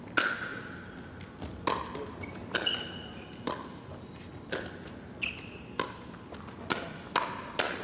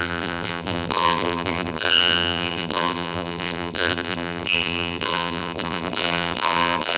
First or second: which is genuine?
first